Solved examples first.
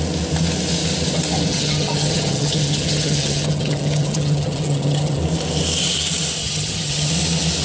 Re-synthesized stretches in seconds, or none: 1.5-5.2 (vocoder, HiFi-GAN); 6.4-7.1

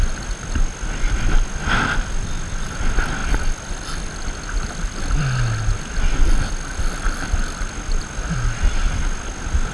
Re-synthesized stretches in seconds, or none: none

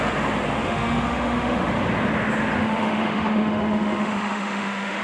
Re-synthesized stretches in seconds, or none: 0.6-1.7 (autoencoder, DAC-VAE); 2.6-5.0

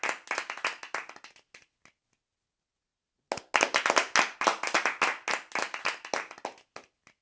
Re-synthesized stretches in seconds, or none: none

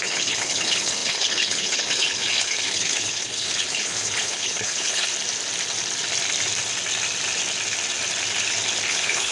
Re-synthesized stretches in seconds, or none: 0.0-5.1 (codec, HILCodec); 8.9-9.3

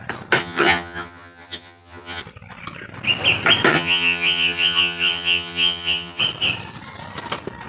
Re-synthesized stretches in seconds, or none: 0.4-2.2 (vocoder, HiFi-GAN); 3.7-6.2